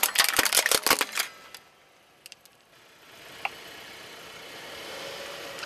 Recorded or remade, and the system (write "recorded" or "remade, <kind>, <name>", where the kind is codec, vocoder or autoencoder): recorded